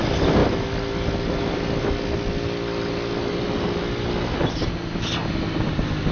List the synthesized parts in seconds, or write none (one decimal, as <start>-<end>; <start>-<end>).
none